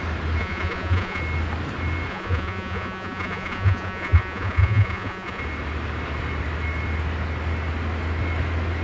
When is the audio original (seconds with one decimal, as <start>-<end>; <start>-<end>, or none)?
0.0-0.4; 1.2-2.1; 5.4-8.8